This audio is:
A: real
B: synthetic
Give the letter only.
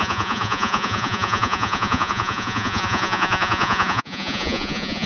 B